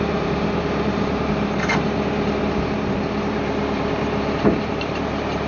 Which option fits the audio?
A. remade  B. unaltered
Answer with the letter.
A